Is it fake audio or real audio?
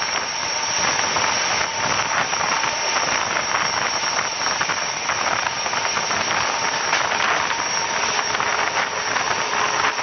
real